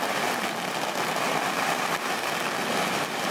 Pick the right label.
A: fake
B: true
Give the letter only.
B